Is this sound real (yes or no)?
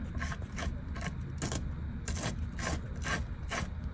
yes